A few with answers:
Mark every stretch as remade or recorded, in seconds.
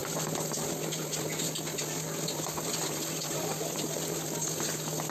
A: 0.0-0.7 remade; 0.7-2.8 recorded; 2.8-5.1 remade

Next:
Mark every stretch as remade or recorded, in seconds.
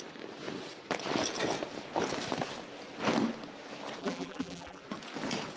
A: 0.0-4.0 recorded; 4.0-4.8 remade; 4.8-5.6 recorded